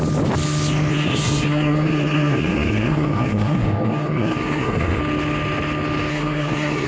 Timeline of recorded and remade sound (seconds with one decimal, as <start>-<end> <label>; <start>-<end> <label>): 0.0-0.9 recorded; 0.9-5.0 remade; 5.0-6.1 recorded; 6.1-6.9 remade